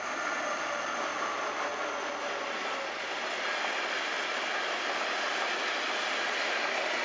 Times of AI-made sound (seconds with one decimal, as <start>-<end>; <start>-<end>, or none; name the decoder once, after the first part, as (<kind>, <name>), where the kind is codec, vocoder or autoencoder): none